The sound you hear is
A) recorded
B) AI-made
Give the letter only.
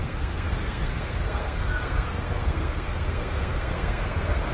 B